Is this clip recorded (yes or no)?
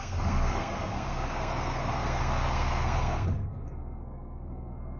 no